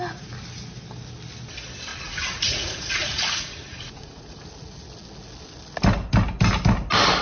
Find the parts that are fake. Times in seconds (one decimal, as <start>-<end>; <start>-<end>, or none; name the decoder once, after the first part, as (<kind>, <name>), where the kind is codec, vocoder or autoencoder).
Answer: 1.9-4.4 (vocoder, Vocos)